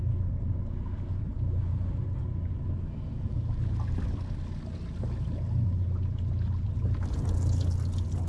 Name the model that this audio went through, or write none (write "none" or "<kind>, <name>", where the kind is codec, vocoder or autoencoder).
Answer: none